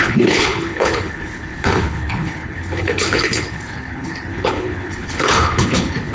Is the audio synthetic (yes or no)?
yes